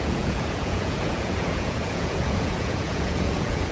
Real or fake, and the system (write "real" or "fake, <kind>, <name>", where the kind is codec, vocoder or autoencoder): fake, vocoder, Vocos